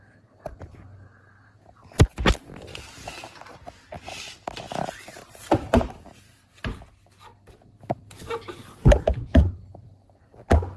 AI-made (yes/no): no